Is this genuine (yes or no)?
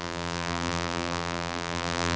no